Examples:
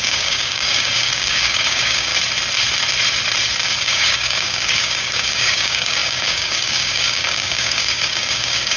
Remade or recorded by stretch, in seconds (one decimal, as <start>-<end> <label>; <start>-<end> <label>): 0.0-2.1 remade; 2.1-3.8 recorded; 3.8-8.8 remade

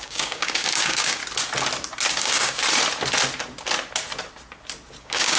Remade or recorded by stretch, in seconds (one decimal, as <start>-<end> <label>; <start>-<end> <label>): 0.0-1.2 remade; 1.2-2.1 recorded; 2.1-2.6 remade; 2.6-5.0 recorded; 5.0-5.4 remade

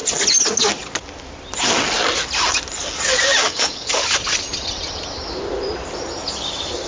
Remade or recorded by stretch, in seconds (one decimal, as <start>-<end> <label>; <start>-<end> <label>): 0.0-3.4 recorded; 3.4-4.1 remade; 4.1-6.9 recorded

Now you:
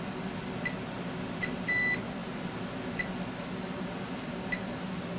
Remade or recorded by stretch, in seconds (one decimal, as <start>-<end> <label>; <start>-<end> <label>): 0.0-5.2 recorded

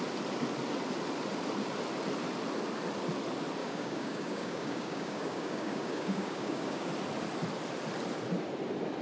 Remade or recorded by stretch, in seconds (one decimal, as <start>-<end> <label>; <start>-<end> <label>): 0.0-3.6 recorded; 3.6-6.9 remade; 6.9-9.0 recorded